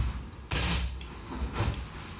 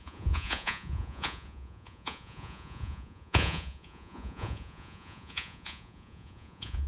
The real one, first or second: first